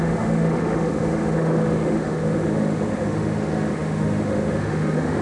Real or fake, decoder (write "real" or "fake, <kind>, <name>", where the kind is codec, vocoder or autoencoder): fake, autoencoder, DAC-VAE